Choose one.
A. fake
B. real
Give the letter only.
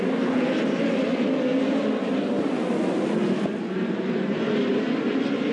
B